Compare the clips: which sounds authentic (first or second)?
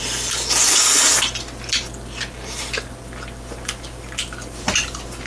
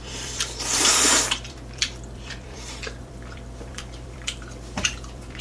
first